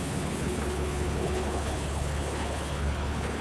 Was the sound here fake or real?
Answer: fake